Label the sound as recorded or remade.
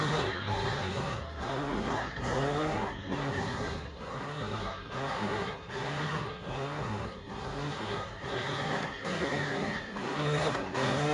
remade